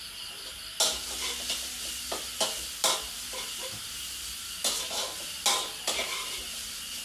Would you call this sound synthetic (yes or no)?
no